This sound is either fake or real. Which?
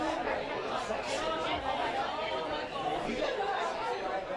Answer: real